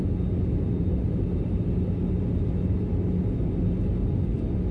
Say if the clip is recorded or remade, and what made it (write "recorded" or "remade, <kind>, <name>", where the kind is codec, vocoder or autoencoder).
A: recorded